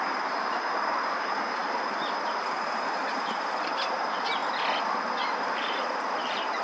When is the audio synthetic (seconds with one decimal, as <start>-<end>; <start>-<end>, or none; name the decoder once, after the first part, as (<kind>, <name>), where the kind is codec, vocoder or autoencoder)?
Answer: 0.0-4.4 (vocoder, BigVGAN v2); 5.5-6.6